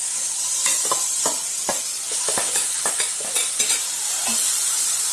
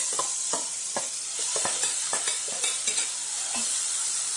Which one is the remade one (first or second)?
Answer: second